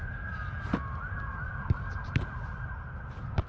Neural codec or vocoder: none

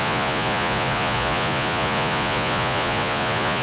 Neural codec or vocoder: vocoder, Vocos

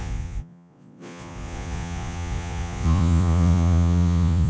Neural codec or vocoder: vocoder, Vocos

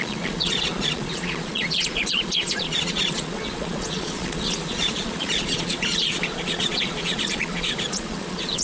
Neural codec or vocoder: vocoder, Vocos